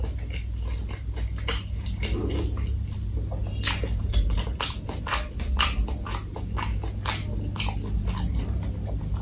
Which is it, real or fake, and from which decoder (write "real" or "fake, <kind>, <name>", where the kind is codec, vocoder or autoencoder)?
real